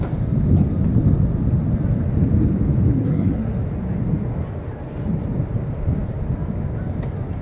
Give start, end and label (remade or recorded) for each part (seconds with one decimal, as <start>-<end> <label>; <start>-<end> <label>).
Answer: 0.0-3.0 recorded; 3.0-3.6 remade; 3.6-7.4 recorded